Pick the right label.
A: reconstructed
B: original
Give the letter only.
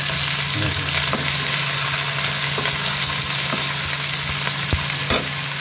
B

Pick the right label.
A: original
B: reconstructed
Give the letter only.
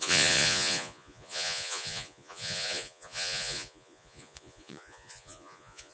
B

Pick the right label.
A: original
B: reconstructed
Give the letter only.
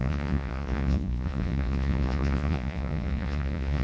B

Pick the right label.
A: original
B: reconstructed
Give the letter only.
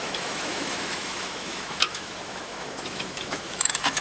B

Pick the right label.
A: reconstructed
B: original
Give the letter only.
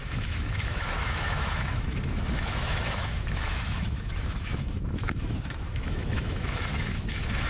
A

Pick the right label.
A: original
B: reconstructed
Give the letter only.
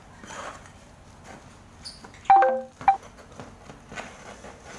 A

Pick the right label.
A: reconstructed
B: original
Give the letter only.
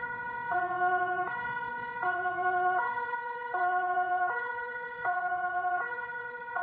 A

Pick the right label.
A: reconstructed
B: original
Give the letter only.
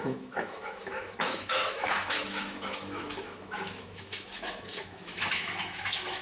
A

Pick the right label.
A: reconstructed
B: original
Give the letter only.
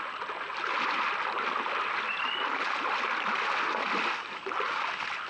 B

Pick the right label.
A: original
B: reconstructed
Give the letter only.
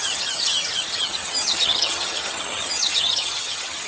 B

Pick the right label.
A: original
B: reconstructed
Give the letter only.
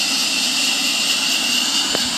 A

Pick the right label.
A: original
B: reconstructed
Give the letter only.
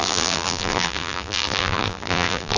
B